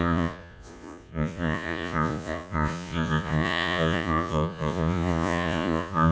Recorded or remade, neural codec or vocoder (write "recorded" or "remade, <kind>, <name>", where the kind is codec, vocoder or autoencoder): remade, vocoder, Vocos